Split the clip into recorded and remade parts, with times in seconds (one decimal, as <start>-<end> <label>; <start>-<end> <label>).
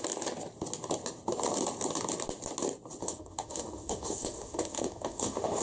0.0-3.0 recorded; 3.0-5.6 remade